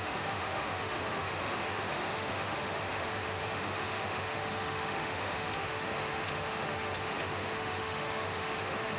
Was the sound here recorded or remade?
remade